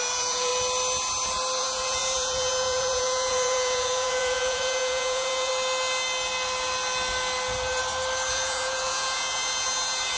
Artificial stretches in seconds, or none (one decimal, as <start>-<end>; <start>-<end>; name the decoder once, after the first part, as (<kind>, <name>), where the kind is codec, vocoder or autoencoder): 0.0-0.5 (vocoder, Vocos); 1.6-5.5; 8.3-10.2